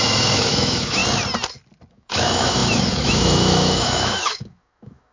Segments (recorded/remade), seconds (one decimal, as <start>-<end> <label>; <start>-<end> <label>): 0.0-1.0 remade; 1.0-1.9 recorded; 1.9-5.1 remade